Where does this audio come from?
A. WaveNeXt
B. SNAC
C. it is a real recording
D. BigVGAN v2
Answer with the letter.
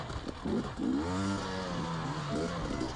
C